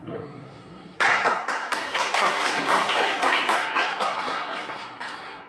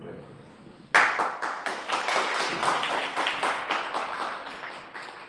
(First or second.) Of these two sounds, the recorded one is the second